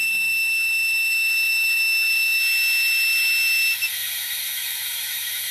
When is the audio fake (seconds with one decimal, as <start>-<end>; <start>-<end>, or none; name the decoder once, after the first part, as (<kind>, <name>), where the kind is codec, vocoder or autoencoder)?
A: 0.0-2.4 (autoencoder, DAC-VAE); 3.9-5.5